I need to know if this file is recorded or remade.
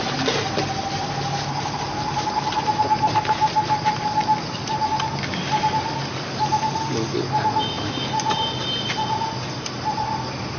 recorded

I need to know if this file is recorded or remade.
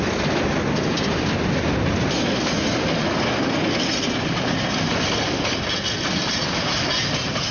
recorded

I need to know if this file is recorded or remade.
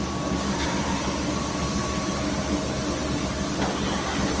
recorded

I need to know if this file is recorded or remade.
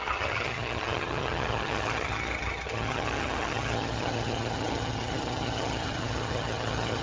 remade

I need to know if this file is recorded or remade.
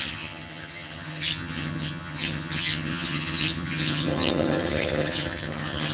remade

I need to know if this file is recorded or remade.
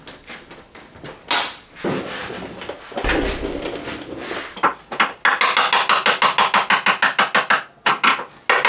recorded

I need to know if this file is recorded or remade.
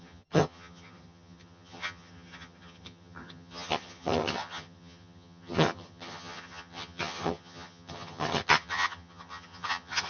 remade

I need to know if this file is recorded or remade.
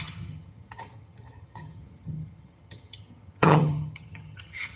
remade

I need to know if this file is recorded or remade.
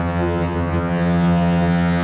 remade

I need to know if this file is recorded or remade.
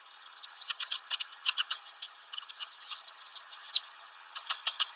remade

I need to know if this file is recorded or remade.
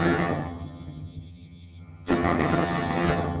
remade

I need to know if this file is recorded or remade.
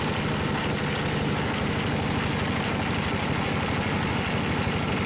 recorded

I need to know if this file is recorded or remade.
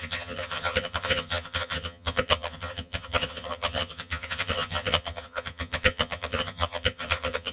remade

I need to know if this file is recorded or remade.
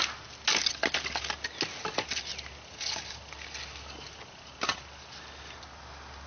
recorded